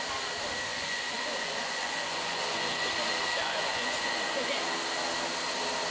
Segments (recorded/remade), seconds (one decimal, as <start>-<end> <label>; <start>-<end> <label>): 0.0-0.7 recorded; 0.7-2.9 remade; 2.9-3.4 recorded; 3.4-4.5 remade; 4.5-5.9 recorded